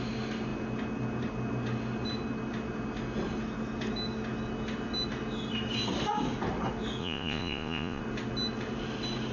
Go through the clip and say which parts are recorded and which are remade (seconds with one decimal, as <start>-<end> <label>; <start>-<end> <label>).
0.0-7.0 recorded; 7.0-8.0 remade; 8.0-9.3 recorded